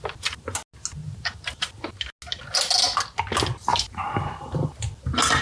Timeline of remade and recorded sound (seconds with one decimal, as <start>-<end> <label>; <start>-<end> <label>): 0.0-1.0 recorded; 1.0-1.6 remade; 1.6-3.7 recorded; 3.7-4.9 remade; 4.9-5.4 recorded